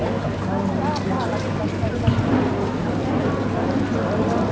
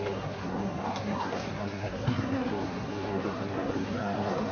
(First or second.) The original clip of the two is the first